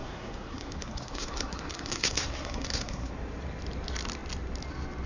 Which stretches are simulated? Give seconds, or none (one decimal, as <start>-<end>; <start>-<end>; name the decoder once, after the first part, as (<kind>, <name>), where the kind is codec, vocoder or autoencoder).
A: 0.0-3.1 (codec, SNAC)